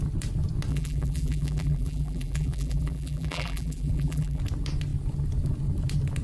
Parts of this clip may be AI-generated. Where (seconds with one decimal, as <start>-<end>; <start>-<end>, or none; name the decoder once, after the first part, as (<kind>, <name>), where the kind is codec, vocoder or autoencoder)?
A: 0.7-4.4 (vocoder, BigVGAN v2)